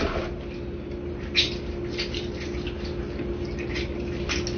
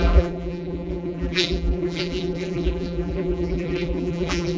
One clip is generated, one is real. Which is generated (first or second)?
second